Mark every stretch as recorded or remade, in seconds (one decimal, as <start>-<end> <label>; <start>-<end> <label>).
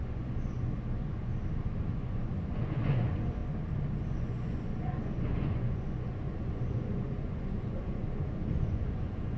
0.0-1.3 remade; 1.3-1.9 recorded; 1.9-3.4 remade; 3.4-4.0 recorded; 4.0-9.4 remade